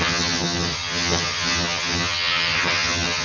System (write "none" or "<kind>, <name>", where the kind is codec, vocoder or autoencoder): vocoder, HiFi-GAN